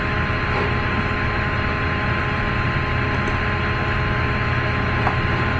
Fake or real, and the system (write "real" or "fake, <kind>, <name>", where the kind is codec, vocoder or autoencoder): real